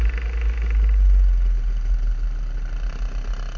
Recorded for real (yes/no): yes